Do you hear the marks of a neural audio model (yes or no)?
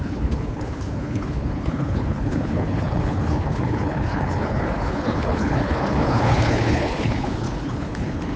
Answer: yes